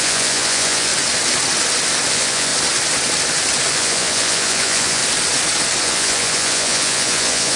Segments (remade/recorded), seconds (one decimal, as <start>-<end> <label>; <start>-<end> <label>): 0.0-0.9 remade; 0.9-2.1 recorded; 2.1-2.5 remade; 2.5-3.7 recorded; 3.7-5.0 remade; 5.0-5.8 recorded; 5.8-7.6 remade